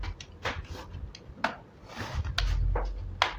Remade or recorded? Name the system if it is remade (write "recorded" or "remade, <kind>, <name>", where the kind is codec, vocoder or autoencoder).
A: recorded